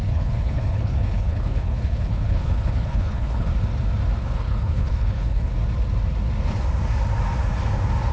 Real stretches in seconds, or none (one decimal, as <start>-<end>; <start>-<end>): 3.5-4.2; 5.5-8.1